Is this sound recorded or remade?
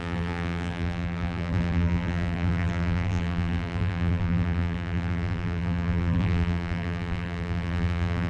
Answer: remade